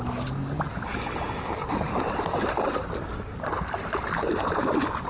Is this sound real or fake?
real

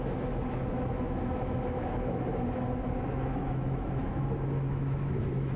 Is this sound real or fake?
fake